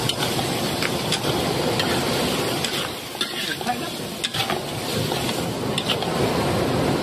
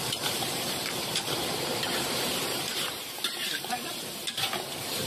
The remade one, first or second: second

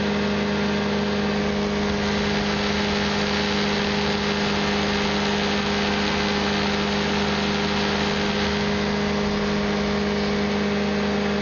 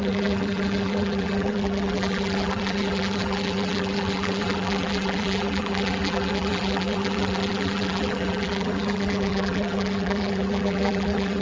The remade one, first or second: second